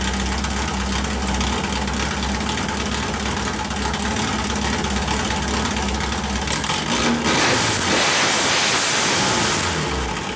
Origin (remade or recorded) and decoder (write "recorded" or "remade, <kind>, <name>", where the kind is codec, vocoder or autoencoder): recorded